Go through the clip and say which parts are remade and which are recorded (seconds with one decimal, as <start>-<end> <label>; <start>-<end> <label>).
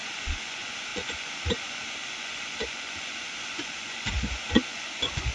0.0-5.3 remade